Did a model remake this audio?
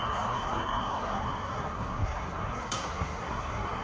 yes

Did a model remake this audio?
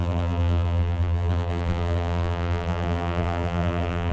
yes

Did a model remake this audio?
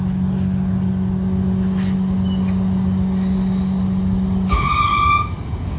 no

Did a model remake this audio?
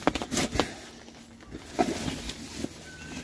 no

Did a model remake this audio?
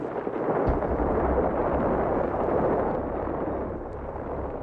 no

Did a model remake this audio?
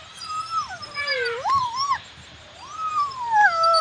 yes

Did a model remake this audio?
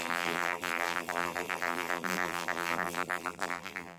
yes